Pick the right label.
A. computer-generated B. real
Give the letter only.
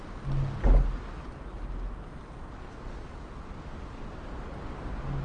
B